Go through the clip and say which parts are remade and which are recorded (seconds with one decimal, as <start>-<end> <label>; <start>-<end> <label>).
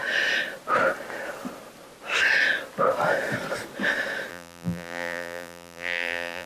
0.0-4.3 recorded; 4.3-6.5 remade